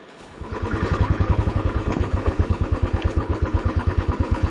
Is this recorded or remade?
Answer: remade